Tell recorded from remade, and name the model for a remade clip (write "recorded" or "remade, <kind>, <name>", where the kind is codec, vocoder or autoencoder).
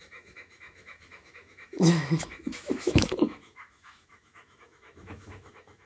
remade, autoencoder, DAC-VAE